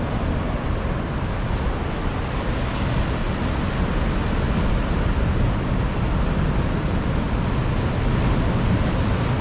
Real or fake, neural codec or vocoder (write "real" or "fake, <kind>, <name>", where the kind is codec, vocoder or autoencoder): real